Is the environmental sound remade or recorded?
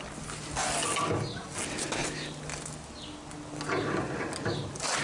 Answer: recorded